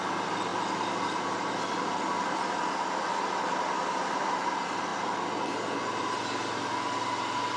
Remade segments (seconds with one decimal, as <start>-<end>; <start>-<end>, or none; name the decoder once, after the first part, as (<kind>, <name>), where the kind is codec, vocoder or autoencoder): none